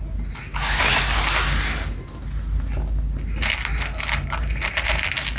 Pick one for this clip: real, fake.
real